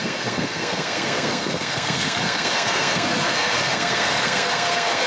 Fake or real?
fake